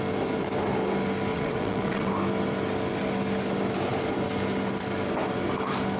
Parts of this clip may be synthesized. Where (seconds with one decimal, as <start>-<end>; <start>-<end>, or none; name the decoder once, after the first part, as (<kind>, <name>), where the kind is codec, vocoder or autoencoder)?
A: 1.3-2.1 (vocoder, WaveNeXt)